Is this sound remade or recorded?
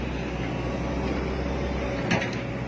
recorded